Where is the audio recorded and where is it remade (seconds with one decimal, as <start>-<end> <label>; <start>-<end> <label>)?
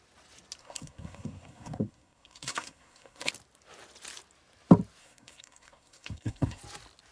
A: 0.0-0.6 recorded; 0.6-3.3 remade; 3.3-5.0 recorded; 5.0-6.6 remade; 6.6-7.1 recorded